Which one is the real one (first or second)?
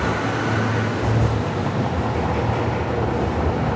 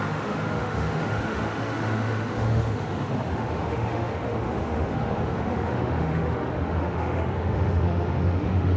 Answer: first